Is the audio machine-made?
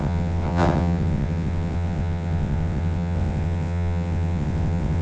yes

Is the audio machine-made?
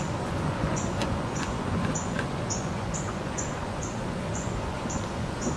yes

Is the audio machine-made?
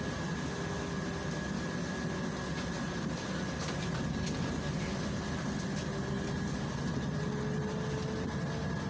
no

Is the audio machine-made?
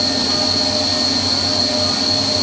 no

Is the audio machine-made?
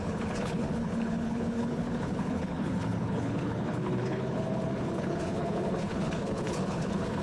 yes